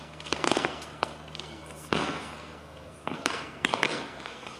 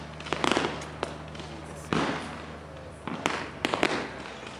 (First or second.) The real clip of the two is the second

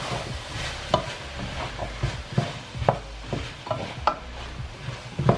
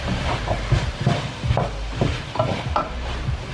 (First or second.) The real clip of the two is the first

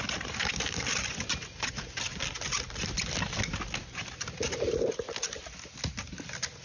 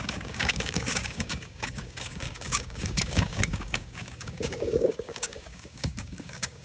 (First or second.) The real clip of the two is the first